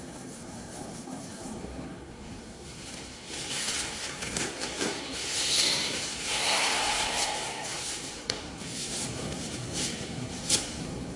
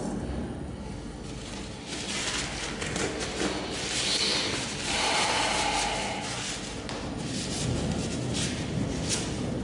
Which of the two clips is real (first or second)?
second